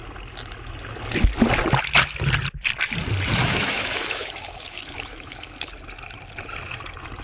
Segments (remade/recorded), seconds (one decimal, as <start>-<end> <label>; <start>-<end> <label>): 0.0-3.4 recorded; 3.4-5.7 remade; 5.7-7.2 recorded